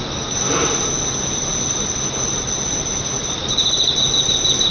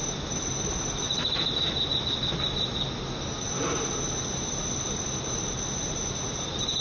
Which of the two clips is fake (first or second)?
second